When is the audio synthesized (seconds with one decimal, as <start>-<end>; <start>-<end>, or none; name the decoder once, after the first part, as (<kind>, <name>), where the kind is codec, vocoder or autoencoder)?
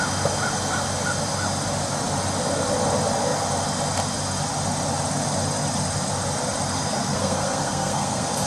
7.0-8.5 (codec, SNAC)